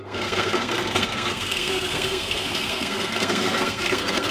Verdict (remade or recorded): remade